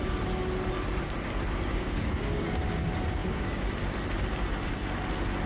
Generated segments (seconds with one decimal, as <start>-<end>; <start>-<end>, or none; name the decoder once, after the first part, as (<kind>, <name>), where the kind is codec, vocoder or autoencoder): 1.7-2.6 (codec, DAC); 3.2-3.7